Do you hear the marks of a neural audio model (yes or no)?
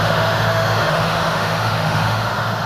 yes